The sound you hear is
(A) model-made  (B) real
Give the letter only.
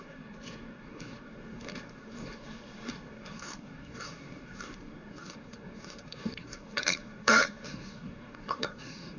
A